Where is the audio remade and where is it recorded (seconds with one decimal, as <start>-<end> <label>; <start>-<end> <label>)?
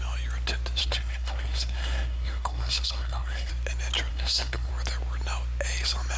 0.0-0.8 recorded; 0.8-3.5 remade; 3.5-4.1 recorded; 4.1-4.7 remade; 4.7-6.2 recorded